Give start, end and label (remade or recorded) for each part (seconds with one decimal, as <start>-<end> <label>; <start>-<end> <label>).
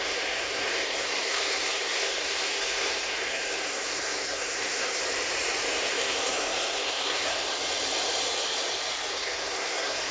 0.0-5.0 remade; 5.0-5.9 recorded; 5.9-7.5 remade; 7.5-9.1 recorded; 9.1-10.1 remade